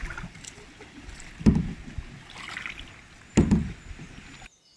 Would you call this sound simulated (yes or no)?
no